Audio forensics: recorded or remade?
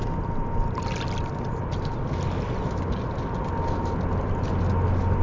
recorded